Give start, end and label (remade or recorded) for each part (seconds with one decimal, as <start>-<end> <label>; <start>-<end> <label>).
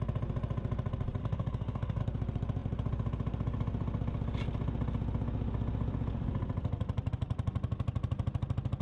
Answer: 0.0-1.2 recorded; 1.2-2.0 remade; 2.0-8.8 recorded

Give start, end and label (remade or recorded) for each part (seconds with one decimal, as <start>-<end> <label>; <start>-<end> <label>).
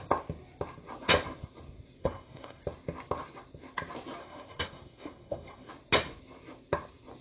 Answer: 0.0-2.0 recorded; 2.0-2.6 remade; 2.6-4.2 recorded; 4.2-5.7 remade; 5.7-7.2 recorded